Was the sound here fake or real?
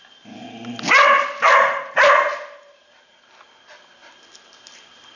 real